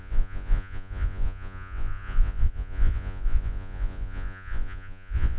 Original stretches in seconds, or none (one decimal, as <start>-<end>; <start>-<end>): none